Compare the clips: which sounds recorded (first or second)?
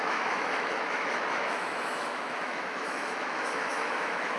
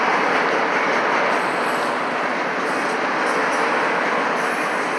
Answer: second